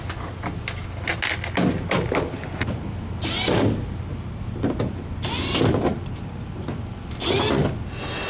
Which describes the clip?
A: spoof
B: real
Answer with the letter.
B